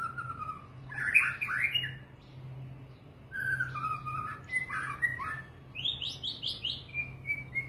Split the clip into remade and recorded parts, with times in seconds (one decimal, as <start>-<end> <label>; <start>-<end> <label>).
0.0-6.9 recorded; 6.9-7.7 remade